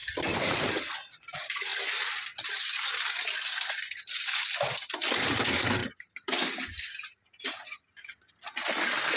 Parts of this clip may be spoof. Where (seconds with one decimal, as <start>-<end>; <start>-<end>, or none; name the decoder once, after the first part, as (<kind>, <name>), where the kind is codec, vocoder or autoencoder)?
0.0-0.8 (vocoder, BigVGAN v2); 5.8-8.3